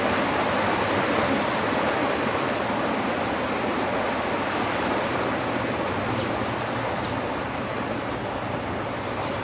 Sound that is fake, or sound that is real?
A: real